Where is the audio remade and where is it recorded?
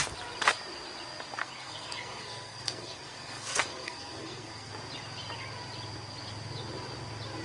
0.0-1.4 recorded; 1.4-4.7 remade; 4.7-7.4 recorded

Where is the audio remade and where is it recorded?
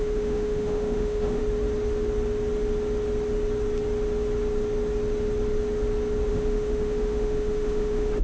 0.0-1.4 remade; 1.4-6.3 recorded; 6.3-8.2 remade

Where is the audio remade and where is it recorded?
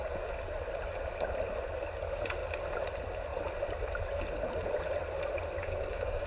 0.0-5.6 recorded; 5.6-6.3 remade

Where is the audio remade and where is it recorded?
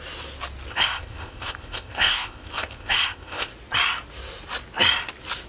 0.0-0.7 recorded; 0.7-3.5 remade; 3.5-5.5 recorded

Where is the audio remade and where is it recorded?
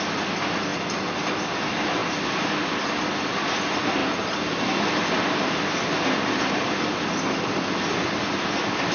0.0-8.9 recorded